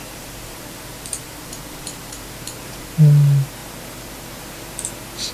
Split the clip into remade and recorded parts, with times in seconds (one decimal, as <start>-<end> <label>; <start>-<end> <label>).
0.0-2.9 remade; 2.9-5.3 recorded